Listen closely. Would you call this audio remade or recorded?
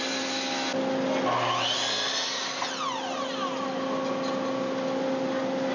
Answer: recorded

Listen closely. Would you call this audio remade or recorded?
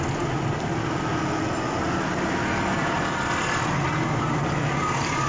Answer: recorded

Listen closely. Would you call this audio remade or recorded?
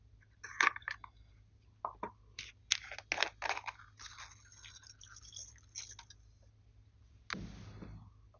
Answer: recorded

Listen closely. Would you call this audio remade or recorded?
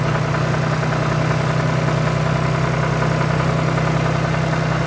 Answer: recorded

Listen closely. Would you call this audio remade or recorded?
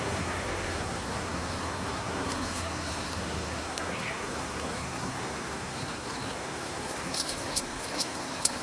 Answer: remade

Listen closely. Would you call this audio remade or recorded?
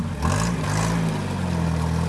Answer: recorded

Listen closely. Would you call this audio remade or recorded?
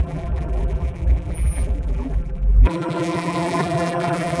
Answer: remade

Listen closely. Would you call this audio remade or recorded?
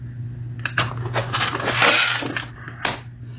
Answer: recorded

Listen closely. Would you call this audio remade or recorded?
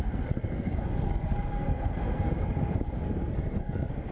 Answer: remade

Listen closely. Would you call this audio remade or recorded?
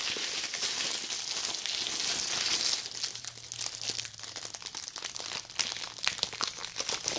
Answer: recorded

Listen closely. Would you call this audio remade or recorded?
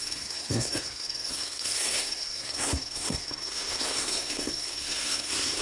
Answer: remade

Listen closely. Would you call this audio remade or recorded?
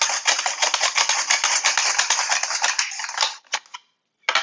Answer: recorded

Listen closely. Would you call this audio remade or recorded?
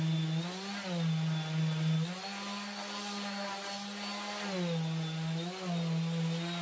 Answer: recorded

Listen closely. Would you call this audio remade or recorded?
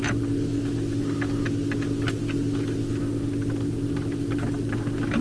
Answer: recorded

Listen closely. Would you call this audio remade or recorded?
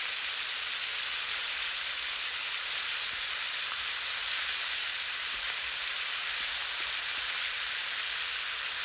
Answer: remade